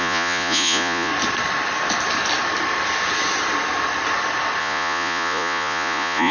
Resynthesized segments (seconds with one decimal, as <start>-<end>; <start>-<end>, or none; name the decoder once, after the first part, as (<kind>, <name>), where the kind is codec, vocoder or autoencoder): 0.0-1.1 (vocoder, Vocos); 4.6-6.3